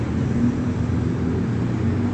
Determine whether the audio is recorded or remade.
remade